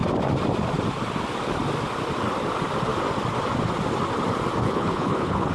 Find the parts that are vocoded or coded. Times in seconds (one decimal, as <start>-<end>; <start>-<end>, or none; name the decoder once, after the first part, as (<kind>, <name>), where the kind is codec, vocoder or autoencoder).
4.6-5.5 (codec, HILCodec)